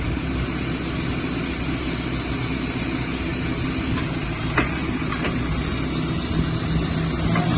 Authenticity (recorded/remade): recorded